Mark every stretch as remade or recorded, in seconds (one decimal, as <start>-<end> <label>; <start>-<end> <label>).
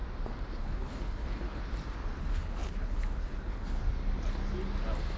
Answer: 0.0-0.6 recorded; 0.6-1.6 remade; 1.6-2.2 recorded; 2.2-3.8 remade; 3.8-5.2 recorded